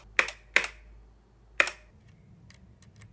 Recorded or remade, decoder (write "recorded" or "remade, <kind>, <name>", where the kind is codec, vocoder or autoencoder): recorded